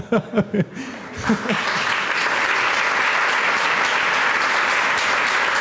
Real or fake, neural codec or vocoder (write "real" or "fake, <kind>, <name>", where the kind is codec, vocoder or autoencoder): real